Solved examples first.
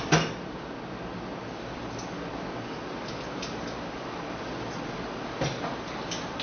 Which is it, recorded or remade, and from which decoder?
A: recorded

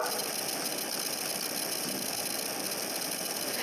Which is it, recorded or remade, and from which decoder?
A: recorded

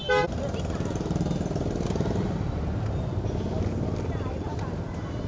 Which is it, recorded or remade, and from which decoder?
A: recorded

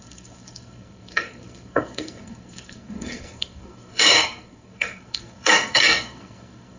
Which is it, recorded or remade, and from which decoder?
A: remade, codec, SNAC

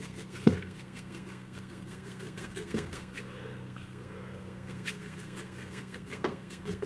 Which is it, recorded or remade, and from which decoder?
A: remade, codec, SNAC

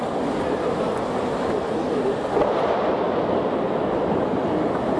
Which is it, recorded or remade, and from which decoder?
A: recorded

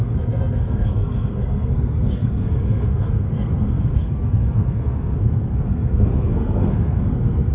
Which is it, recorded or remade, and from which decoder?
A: remade, codec, SNAC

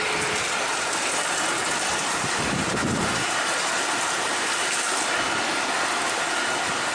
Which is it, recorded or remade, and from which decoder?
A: recorded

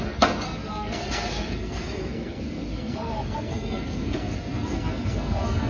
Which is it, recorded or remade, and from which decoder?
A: remade, codec, SNAC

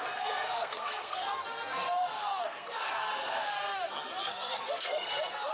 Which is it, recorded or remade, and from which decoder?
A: remade, codec, SNAC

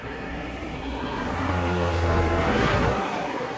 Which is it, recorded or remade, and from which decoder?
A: remade, codec, SNAC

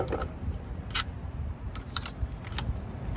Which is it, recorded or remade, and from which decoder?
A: recorded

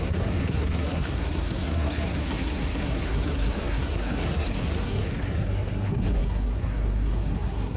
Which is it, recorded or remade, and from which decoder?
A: remade, codec, SNAC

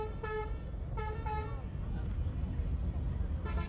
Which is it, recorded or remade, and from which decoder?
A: recorded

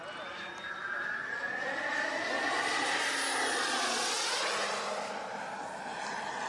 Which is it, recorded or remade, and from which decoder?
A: recorded